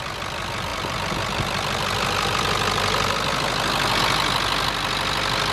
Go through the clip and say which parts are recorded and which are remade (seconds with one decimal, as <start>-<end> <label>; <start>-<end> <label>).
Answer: 0.0-5.5 recorded